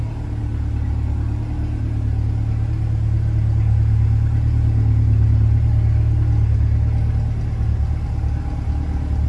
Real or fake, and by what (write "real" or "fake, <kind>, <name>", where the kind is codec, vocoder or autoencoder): real